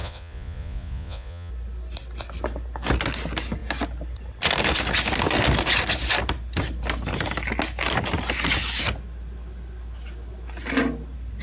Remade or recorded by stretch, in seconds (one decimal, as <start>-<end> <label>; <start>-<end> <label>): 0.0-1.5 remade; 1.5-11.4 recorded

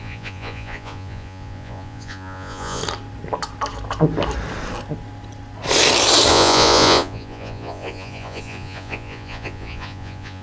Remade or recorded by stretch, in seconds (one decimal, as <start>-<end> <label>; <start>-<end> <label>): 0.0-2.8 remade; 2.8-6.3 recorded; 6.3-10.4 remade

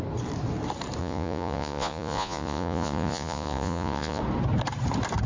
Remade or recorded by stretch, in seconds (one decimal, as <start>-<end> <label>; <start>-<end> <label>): 0.0-1.0 recorded; 1.0-4.2 remade; 4.2-5.3 recorded